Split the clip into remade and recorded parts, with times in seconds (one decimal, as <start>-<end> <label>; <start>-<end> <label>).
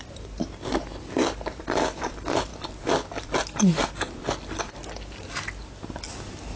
0.0-6.6 recorded